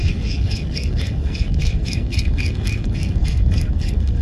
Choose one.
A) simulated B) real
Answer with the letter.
A